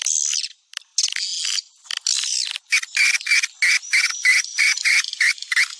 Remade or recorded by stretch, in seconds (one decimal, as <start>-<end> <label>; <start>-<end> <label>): 0.0-4.3 recorded; 4.3-5.3 remade; 5.3-5.8 recorded